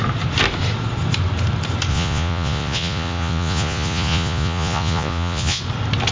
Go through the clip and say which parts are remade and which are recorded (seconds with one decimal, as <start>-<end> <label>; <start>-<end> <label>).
0.0-1.9 recorded; 1.9-5.6 remade; 5.6-6.1 recorded